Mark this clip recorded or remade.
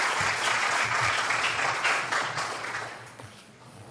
remade